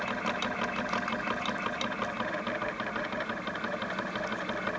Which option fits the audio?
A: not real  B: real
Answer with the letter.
B